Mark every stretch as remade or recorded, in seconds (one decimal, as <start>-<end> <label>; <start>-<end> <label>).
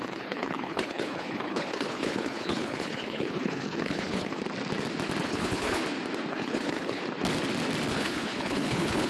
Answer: 0.0-4.4 remade; 4.4-5.2 recorded; 5.2-5.8 remade; 5.8-6.3 recorded; 6.3-7.0 remade; 7.0-7.9 recorded; 7.9-9.1 remade